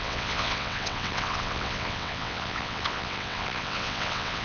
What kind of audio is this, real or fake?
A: fake